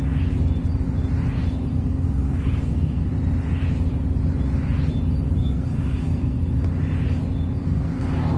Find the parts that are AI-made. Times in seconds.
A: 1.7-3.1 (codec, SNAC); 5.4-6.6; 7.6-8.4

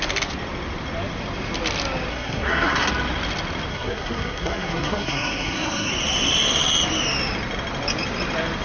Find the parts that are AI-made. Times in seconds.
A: 2.1-2.9 (codec, SNAC); 3.7-5.9

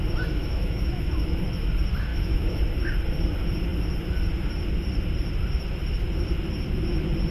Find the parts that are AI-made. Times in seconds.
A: 0.4-1.7 (autoencoder, DAC-VAE); 2.1-2.6

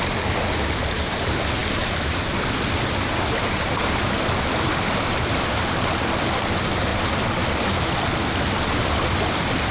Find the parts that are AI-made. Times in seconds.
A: 0.0-6.9 (vocoder, BigVGAN v2); 9.2-9.7

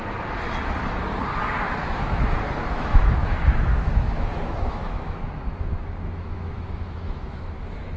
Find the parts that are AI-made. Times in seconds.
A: 1.8-8.0 (autoencoder, DAC-VAE)